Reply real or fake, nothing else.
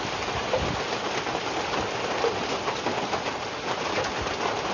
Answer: real